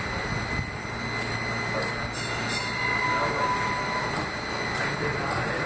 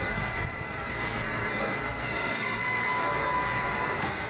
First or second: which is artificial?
second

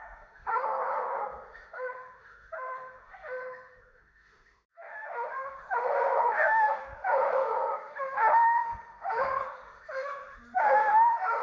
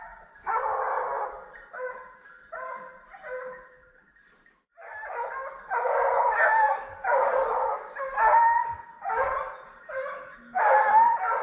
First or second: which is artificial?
first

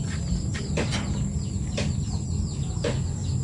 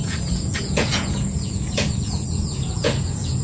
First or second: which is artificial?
second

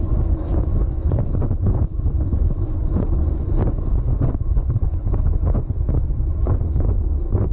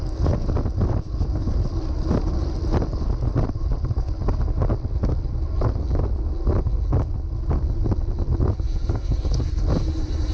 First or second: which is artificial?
first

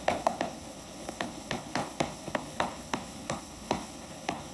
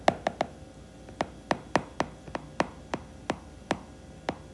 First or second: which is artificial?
first